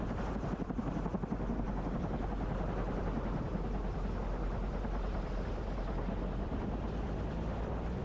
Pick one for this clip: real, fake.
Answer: real